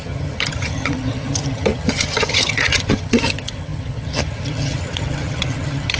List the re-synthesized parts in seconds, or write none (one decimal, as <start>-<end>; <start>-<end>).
0.0-6.0